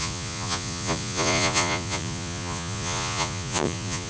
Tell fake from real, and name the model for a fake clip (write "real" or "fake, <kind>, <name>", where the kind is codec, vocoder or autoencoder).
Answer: fake, vocoder, Vocos